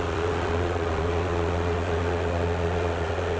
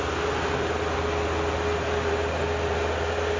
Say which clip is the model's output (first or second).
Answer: first